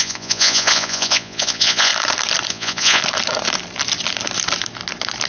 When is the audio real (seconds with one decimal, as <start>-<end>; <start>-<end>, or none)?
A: 1.9-2.5; 3.0-5.3

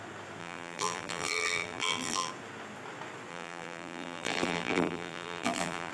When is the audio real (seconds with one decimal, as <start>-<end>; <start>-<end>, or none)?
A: 0.0-0.4; 2.3-3.3

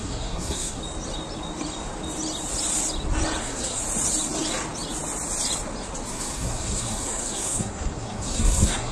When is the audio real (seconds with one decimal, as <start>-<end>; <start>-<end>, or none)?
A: 0.8-3.4; 3.8-6.1

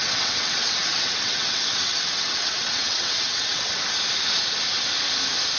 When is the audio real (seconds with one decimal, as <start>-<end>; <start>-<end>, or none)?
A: 3.7-5.6

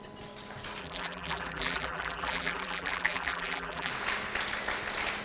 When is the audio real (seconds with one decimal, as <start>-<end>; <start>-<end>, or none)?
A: 0.0-0.8; 3.9-5.2